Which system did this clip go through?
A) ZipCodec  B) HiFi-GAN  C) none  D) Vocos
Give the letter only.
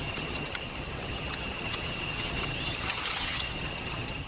B